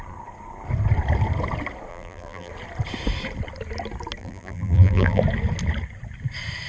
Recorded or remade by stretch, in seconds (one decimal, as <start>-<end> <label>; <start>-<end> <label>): 0.0-1.9 recorded; 1.9-2.5 remade; 2.5-4.2 recorded; 4.2-5.2 remade; 5.2-6.7 recorded